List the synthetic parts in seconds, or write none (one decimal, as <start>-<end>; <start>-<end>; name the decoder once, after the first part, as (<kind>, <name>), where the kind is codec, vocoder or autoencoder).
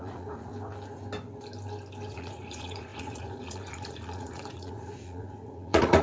0.0-0.5 (vocoder, Vocos); 2.1-6.0